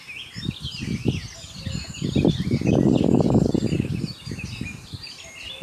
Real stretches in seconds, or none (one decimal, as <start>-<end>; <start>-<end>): 0.0-5.6